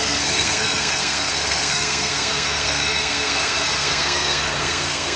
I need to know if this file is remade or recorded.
remade